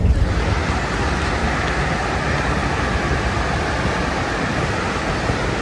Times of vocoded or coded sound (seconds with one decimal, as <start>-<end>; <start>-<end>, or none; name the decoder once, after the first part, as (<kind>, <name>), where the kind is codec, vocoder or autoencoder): none